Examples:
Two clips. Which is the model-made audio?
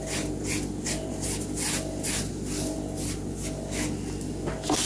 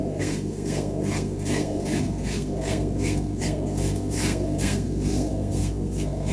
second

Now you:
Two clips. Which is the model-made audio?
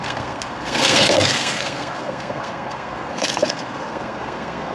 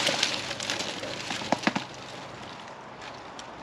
first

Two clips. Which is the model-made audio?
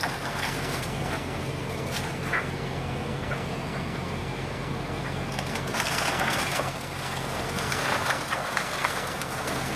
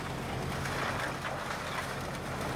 first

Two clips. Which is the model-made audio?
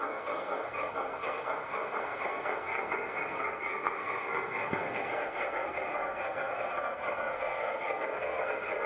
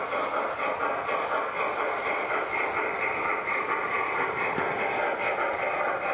first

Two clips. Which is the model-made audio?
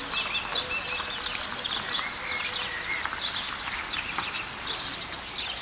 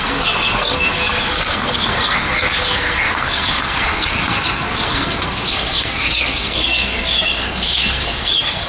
second